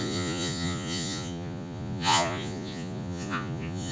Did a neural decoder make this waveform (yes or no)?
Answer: yes